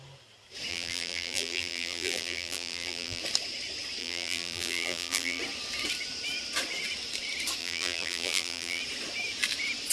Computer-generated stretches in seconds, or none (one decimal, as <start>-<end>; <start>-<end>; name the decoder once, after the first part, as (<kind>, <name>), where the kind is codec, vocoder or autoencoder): 0.7-3.2 (vocoder, BigVGAN v2); 4.0-5.4; 7.6-8.8